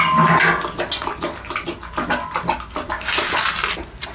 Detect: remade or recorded recorded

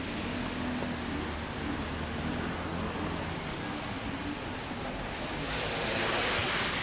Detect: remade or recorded recorded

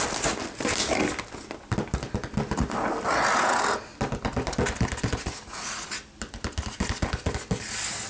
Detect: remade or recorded recorded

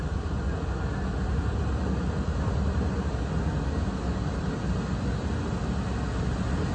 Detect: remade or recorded recorded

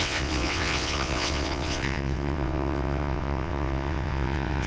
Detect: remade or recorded remade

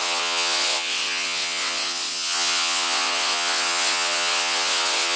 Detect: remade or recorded remade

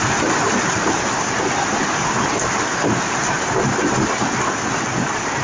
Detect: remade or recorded recorded